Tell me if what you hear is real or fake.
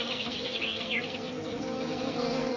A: fake